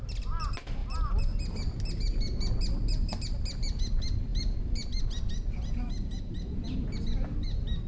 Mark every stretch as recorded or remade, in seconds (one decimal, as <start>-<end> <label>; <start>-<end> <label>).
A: 0.0-7.9 recorded